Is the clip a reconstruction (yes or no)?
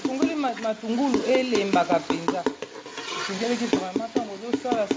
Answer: no